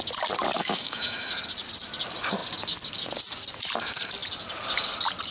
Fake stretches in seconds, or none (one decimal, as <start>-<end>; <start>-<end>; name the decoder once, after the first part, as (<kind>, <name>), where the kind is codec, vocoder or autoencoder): 0.6-1.3 (autoencoder, DAC-VAE)